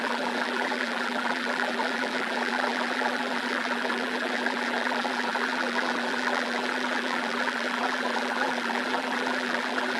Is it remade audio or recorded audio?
remade